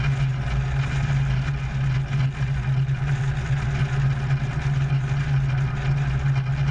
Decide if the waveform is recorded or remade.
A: recorded